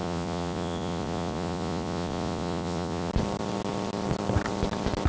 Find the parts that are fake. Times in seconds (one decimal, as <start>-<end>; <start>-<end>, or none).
0.0-3.1